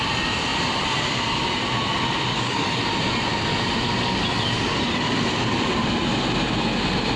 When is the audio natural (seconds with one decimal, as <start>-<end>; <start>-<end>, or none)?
0.0-2.3; 2.8-7.2